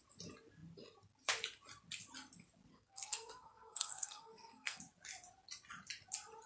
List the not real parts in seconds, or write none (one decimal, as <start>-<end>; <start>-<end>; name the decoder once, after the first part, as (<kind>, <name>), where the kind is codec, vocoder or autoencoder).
2.7-4.8 (codec, SNAC)